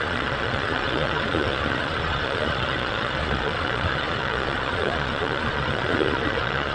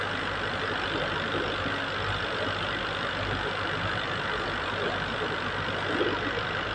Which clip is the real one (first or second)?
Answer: second